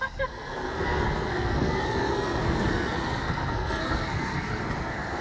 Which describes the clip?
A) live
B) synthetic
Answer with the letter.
B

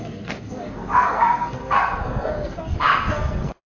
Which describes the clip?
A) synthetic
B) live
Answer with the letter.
A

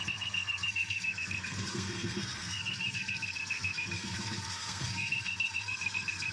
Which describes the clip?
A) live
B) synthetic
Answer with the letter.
B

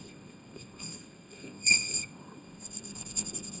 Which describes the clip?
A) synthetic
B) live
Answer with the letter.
A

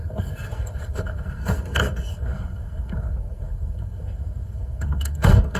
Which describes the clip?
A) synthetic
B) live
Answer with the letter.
A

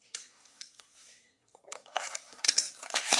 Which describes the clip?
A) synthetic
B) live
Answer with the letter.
A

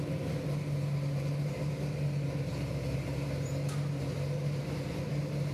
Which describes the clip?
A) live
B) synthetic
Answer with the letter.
A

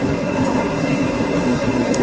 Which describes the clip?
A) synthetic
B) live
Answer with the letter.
A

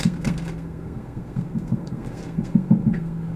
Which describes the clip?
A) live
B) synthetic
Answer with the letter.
B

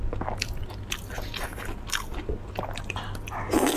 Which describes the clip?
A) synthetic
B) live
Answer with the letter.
B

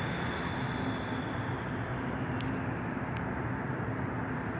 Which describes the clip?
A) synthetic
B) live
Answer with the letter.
B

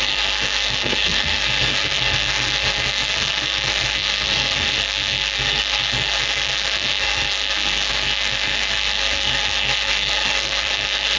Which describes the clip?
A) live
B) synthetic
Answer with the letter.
B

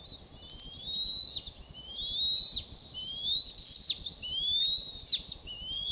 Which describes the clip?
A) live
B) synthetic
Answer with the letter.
A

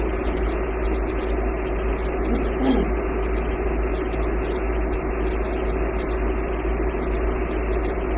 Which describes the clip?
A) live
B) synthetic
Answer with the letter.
A